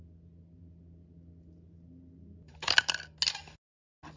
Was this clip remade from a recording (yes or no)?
no